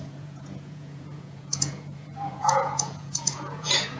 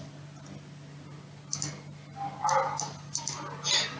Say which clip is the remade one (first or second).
first